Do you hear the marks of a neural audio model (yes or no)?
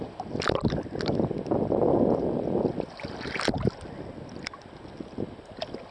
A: no